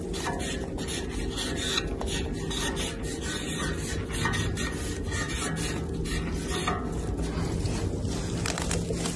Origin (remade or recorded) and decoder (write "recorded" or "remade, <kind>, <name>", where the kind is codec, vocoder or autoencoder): recorded